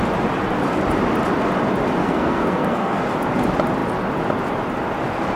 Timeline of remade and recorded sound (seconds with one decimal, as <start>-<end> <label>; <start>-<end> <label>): 0.0-2.0 recorded; 2.0-3.0 remade; 3.0-5.4 recorded